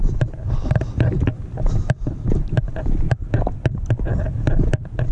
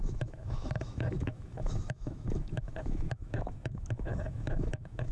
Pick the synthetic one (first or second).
second